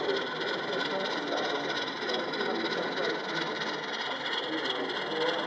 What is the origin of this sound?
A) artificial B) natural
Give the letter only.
B